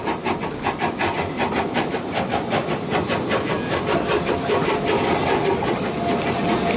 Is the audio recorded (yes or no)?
yes